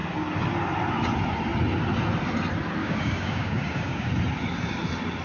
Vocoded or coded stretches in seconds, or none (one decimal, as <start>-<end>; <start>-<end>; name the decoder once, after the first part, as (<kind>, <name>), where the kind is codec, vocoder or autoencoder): 2.8-4.1 (codec, DAC)